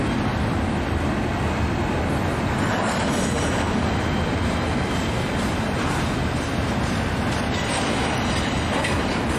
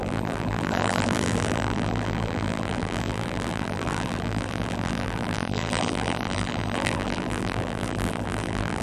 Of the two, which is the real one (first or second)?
first